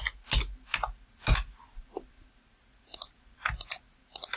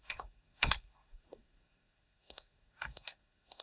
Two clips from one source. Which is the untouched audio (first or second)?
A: first